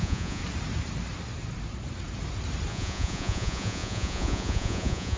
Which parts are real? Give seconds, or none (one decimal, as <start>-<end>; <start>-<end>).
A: 0.4-2.7